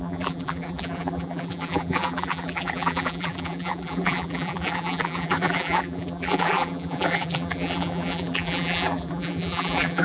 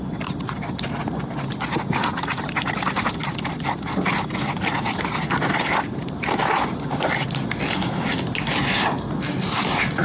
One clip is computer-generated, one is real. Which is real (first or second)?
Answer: second